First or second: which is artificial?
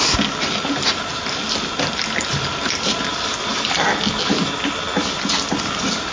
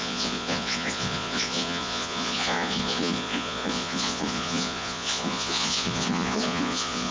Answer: second